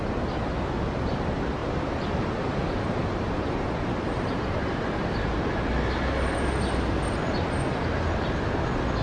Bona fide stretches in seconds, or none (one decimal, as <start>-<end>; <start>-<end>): 0.0-1.6; 5.3-9.0